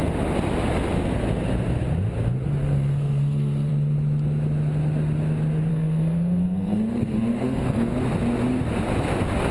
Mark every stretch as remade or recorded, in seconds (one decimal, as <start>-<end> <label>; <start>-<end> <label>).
0.0-2.6 recorded; 2.6-3.7 remade; 3.7-5.7 recorded; 5.7-7.9 remade; 7.9-9.5 recorded